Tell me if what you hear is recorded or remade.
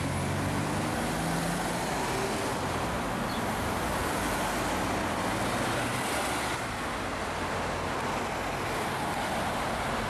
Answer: recorded